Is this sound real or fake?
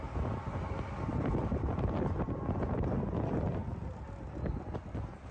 real